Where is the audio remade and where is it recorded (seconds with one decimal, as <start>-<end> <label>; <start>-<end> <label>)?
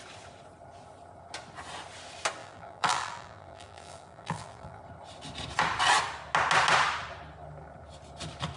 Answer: 0.0-2.4 recorded; 2.4-4.8 remade; 4.8-8.6 recorded